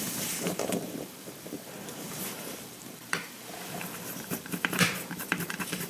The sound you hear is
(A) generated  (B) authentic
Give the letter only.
A